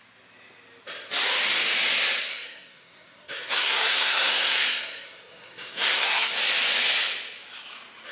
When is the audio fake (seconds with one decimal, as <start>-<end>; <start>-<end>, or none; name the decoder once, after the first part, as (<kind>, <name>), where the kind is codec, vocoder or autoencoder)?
2.3-6.3 (codec, SNAC)